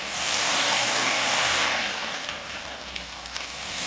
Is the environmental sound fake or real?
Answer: fake